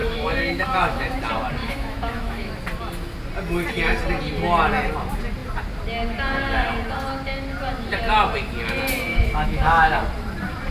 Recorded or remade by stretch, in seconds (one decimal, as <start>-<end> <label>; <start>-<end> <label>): 0.0-1.1 remade; 1.1-1.6 recorded; 1.6-2.5 remade; 2.5-9.1 recorded; 9.1-10.0 remade; 10.0-10.7 recorded